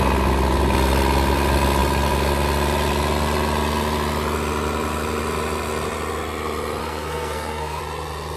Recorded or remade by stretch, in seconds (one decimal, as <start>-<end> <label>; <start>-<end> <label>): 0.0-6.8 recorded; 6.8-7.8 remade; 7.8-8.4 recorded